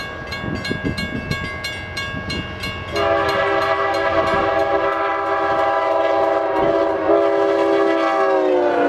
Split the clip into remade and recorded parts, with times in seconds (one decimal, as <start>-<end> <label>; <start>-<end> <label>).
0.0-8.9 recorded